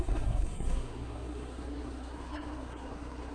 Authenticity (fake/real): fake